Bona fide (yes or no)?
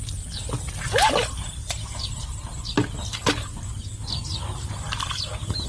yes